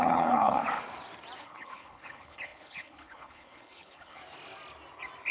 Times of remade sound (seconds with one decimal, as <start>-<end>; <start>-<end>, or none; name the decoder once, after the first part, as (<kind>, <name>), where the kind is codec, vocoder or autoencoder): 0.0-0.6 (codec, HILCodec); 1.4-4.2